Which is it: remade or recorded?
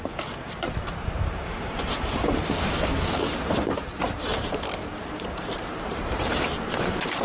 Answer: remade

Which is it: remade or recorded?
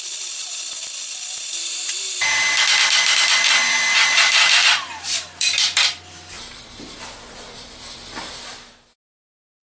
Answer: remade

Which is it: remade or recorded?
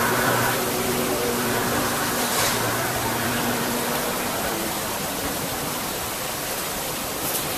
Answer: remade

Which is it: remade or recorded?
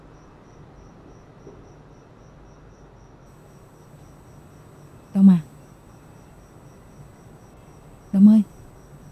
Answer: recorded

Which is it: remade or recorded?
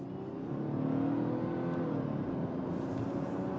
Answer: recorded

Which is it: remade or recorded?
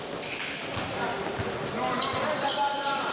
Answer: recorded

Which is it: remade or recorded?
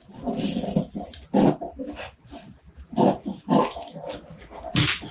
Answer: recorded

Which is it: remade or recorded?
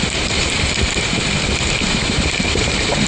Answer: remade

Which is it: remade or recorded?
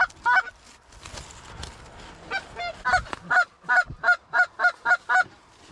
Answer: recorded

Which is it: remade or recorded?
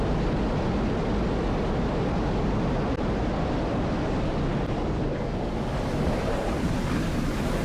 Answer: recorded